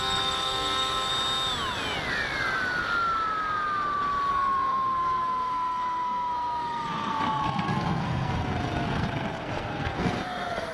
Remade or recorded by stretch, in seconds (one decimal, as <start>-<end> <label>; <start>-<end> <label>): 0.0-1.1 remade; 1.1-4.3 recorded; 4.3-10.7 remade